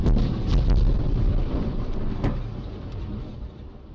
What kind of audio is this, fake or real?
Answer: real